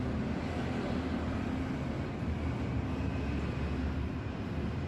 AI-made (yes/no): no